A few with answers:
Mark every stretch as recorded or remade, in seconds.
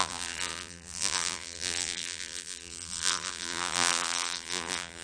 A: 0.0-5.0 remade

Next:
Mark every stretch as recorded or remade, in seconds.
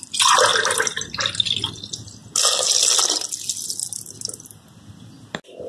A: 0.0-5.7 recorded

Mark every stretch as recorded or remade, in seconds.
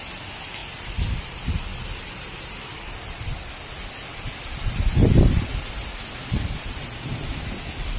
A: 0.0-0.6 recorded; 0.6-1.2 remade; 1.2-8.0 recorded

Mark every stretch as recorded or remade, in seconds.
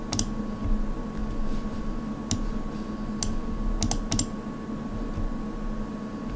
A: 0.0-6.4 recorded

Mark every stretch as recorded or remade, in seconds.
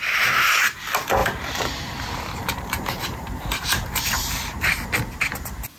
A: 0.0-1.2 recorded; 1.2-4.7 remade; 4.7-5.8 recorded